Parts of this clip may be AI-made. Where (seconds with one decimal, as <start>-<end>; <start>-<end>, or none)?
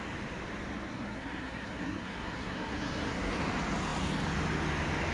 0.9-3.3